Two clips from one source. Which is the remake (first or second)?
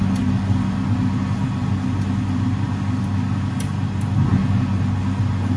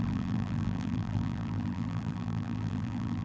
second